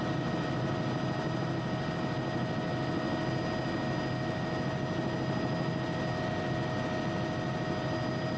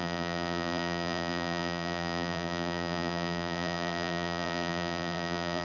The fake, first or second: second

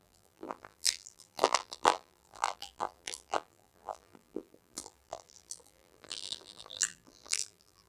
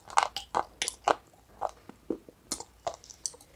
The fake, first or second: first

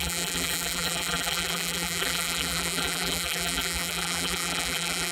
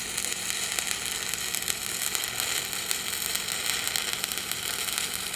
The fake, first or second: first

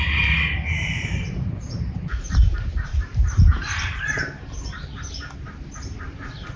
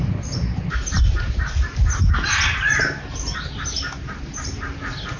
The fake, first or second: first